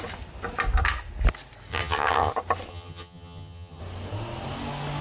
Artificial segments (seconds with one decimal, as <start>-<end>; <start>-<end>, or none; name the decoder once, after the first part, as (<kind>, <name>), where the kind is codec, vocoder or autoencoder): 1.7-2.3 (vocoder, HiFi-GAN); 2.7-3.8